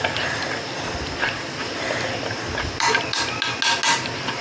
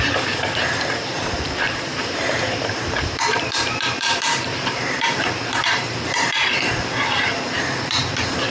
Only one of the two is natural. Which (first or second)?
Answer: first